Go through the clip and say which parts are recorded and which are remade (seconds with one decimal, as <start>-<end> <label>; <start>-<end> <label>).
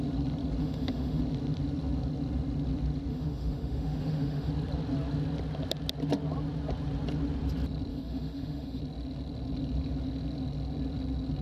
0.0-0.6 recorded; 0.6-1.2 remade; 1.2-3.1 recorded; 3.1-4.5 remade; 4.5-7.9 recorded; 7.9-8.8 remade; 8.8-11.4 recorded